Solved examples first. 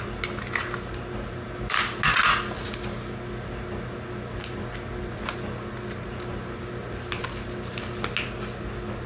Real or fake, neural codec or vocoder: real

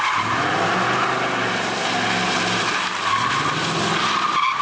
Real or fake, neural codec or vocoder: real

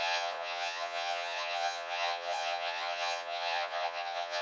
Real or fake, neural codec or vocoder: fake, vocoder, Vocos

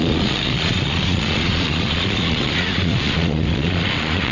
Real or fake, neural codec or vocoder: fake, vocoder, Vocos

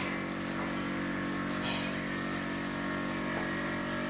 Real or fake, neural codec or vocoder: real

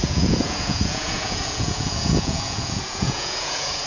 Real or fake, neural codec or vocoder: fake, vocoder, Vocos